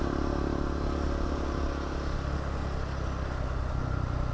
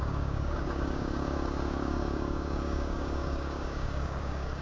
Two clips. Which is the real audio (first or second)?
first